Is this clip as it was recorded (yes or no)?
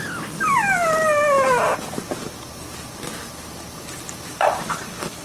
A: yes